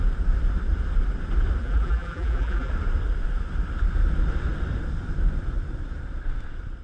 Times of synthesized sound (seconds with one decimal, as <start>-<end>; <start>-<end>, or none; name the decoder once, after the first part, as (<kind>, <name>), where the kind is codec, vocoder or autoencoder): 1.6-2.7 (vocoder, BigVGAN v2)